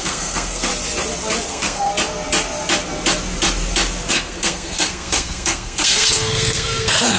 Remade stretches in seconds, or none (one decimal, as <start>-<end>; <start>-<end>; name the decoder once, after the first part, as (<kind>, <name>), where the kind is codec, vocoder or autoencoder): 0.0-0.7 (codec, SNAC); 1.5-1.9; 4.1-7.2